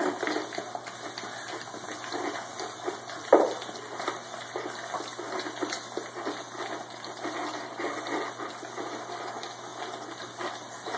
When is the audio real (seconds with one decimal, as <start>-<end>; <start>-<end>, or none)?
0.0-11.0